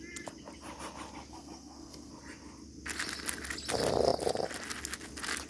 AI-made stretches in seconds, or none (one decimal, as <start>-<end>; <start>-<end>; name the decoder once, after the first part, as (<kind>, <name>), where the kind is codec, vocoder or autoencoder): 1.3-2.1 (codec, SNAC)